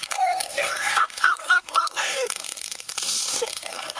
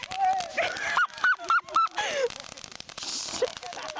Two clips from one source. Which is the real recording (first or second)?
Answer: second